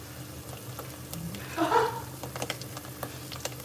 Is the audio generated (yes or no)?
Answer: no